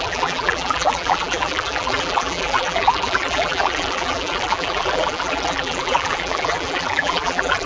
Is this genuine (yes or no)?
no